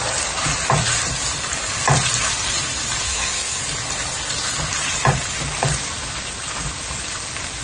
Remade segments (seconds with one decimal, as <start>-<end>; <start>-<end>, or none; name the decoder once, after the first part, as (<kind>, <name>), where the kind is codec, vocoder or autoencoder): 3.0-3.6 (codec, SNAC)

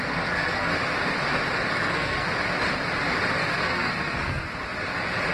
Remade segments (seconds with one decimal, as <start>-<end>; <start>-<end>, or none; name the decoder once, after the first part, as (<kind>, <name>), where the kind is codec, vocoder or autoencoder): 0.0-0.7 (codec, SNAC); 1.7-2.3; 3.4-4.5

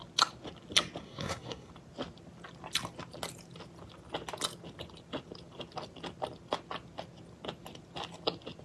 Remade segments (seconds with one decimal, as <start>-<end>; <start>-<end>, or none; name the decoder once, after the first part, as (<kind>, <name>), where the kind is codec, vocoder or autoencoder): 1.0-1.7 (codec, SNAC)

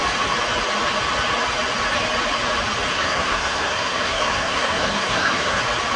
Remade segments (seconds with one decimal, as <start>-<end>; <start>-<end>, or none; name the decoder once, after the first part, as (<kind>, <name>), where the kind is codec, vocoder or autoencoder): 2.9-5.6 (codec, SNAC)

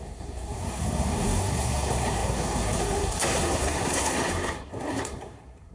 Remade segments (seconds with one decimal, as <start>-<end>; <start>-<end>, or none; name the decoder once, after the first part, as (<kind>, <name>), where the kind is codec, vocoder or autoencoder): 0.0-5.7 (codec, SNAC)

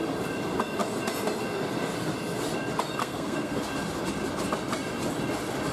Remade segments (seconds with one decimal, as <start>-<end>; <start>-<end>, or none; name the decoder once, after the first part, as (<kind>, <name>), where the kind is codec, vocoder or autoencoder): 3.0-3.6 (codec, SNAC)

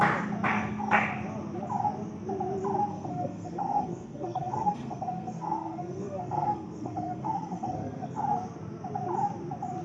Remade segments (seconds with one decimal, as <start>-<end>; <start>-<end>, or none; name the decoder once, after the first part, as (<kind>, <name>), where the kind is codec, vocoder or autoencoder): 0.5-1.1 (codec, SNAC); 2.9-8.2